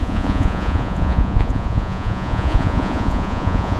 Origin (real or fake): fake